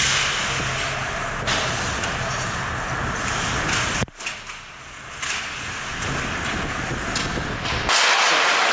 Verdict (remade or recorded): recorded